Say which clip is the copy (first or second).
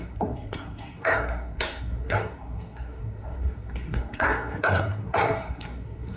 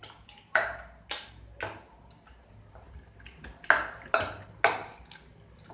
first